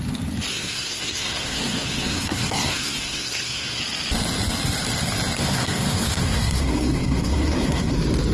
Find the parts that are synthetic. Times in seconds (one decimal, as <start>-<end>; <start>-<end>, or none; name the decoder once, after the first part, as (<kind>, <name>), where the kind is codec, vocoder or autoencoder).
0.5-3.8 (codec, SNAC); 5.4-7.9